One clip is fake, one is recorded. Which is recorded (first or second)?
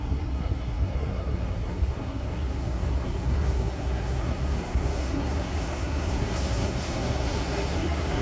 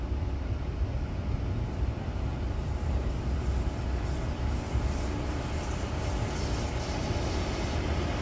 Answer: second